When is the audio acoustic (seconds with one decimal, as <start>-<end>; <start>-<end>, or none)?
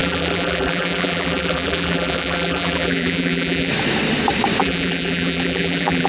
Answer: 3.7-4.6